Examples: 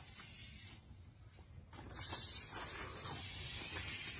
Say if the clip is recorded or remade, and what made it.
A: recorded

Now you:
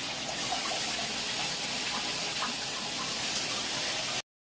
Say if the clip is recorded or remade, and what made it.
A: recorded